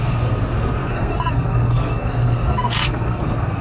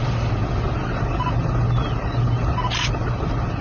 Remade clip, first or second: first